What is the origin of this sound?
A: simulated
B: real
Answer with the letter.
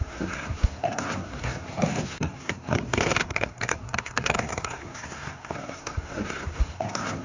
A